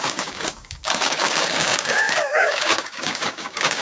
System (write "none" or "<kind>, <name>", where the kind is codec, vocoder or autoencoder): codec, DAC